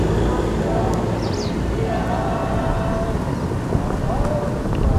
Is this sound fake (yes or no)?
no